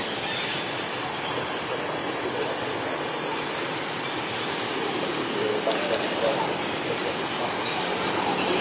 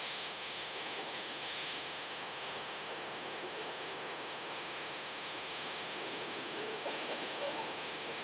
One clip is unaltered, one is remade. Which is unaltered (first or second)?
first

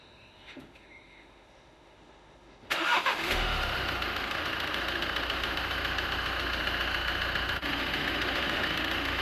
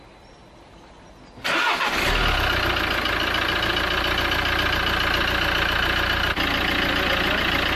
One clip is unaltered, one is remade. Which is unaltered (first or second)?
second